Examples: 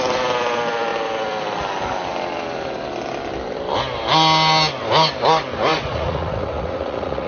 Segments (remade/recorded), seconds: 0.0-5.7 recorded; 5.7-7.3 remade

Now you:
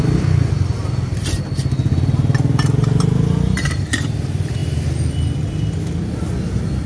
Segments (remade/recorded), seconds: 0.0-6.9 recorded

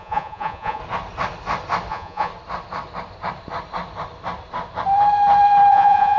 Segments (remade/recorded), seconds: 0.0-0.8 remade; 0.8-1.9 recorded; 1.9-2.3 remade; 2.3-5.7 recorded; 5.7-6.2 remade

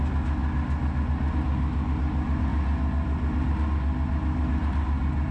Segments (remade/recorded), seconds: 0.0-5.3 recorded

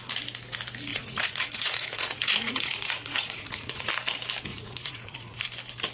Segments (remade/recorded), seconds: 0.0-0.9 recorded; 0.9-3.9 remade; 3.9-4.5 recorded; 4.5-5.4 remade; 5.4-5.9 recorded

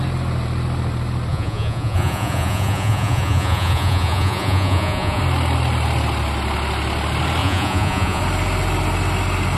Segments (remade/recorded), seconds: 0.0-1.3 recorded; 1.3-5.2 remade; 5.2-7.4 recorded; 7.4-8.2 remade; 8.2-9.6 recorded

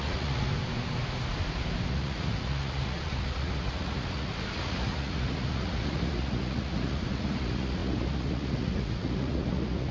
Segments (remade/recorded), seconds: 0.0-0.5 remade; 0.5-1.9 recorded; 1.9-9.9 remade